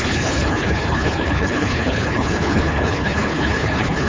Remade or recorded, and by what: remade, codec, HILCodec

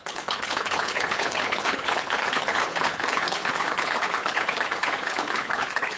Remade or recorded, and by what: remade, codec, HILCodec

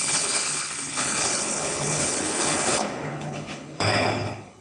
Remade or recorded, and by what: remade, codec, HILCodec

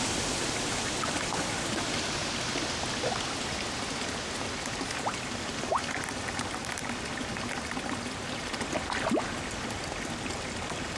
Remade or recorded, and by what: recorded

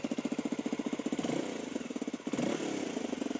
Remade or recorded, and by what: recorded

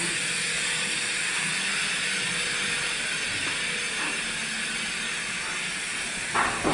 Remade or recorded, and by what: recorded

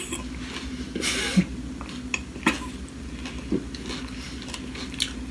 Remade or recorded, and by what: recorded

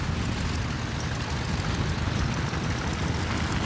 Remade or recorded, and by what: recorded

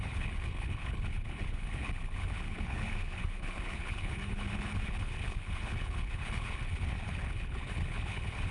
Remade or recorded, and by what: remade, codec, HILCodec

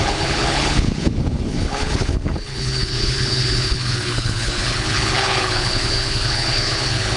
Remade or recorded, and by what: remade, codec, HILCodec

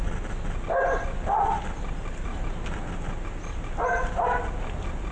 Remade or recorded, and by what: recorded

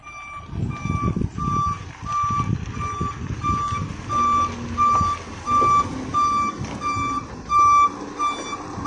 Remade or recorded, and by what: recorded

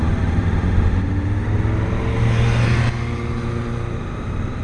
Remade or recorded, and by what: recorded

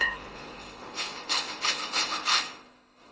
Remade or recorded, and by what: remade, codec, HILCodec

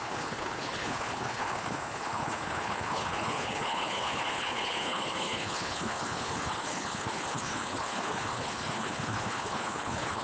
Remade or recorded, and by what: remade, codec, HILCodec